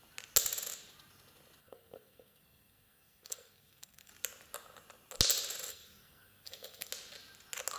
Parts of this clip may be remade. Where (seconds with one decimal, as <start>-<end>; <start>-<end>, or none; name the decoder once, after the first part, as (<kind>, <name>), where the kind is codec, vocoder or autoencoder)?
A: 1.6-4.1 (codec, SNAC); 5.7-6.9